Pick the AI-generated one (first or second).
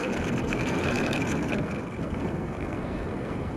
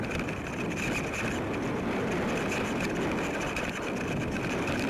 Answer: first